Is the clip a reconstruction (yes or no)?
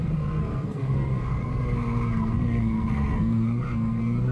yes